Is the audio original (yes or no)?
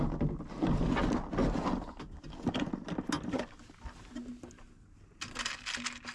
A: yes